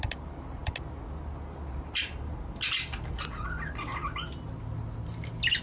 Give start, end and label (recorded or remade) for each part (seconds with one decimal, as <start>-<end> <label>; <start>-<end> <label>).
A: 0.0-5.6 recorded